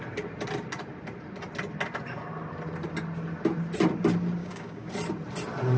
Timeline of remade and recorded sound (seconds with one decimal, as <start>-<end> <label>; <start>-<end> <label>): 0.0-4.4 recorded; 4.4-4.9 remade; 4.9-5.8 recorded

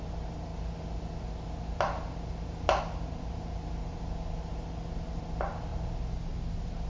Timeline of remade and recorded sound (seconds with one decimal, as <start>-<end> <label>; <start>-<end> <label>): 0.0-6.9 recorded